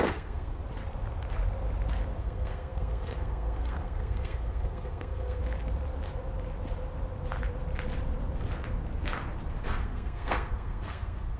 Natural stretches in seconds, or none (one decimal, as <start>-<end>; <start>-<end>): 0.6-2.2; 5.4-9.6